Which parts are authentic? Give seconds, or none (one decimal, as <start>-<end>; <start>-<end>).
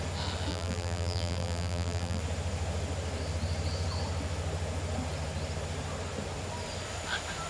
0.0-0.5; 2.2-7.5